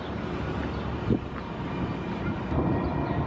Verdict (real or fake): real